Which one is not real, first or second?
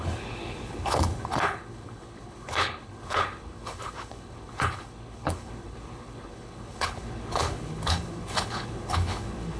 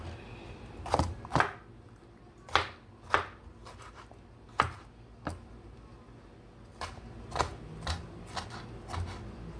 first